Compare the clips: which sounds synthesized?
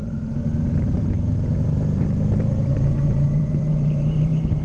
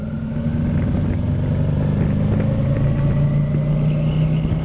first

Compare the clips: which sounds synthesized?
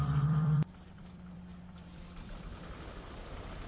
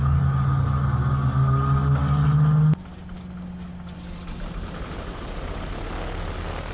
first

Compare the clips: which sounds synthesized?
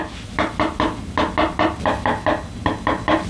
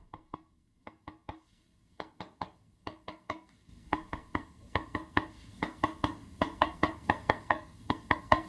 second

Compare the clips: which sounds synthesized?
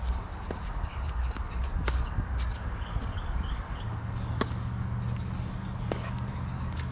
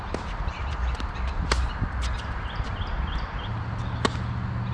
first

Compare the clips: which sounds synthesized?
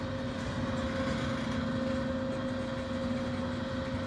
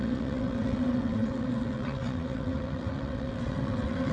second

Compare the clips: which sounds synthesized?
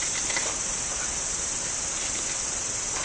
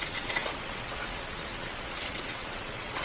second